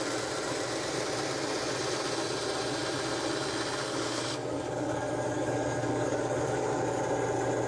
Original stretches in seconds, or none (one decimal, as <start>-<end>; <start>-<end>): 0.0-3.9; 7.0-7.7